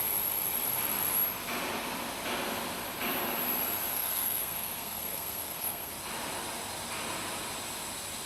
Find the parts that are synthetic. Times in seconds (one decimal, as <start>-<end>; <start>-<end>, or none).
3.9-5.9